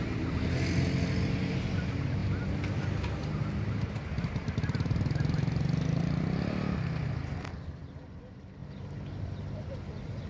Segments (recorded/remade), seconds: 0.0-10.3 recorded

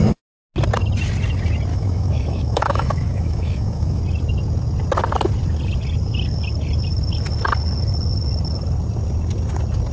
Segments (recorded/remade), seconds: 0.0-1.7 recorded; 1.7-4.0 remade; 4.0-9.9 recorded

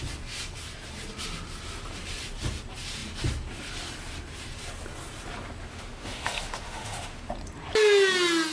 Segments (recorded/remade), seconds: 0.0-5.6 recorded; 5.6-7.3 remade; 7.3-8.5 recorded